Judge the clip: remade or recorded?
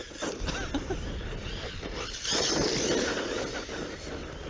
recorded